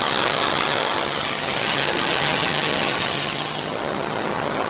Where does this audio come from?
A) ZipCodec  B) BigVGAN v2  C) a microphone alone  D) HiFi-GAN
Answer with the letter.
D